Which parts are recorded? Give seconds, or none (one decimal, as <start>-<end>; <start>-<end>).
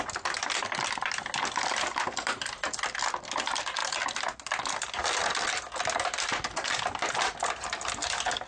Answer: 0.0-8.5